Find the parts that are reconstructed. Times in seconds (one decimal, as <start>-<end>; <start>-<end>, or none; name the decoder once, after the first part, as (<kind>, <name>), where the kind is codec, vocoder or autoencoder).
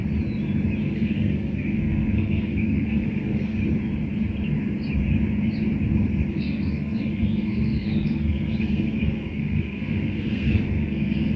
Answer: 0.8-3.6 (codec, SNAC); 6.3-11.4